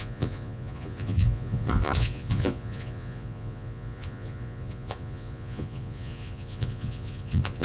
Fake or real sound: fake